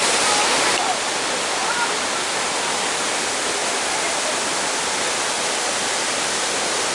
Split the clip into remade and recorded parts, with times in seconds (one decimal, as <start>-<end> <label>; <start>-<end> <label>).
0.0-6.9 recorded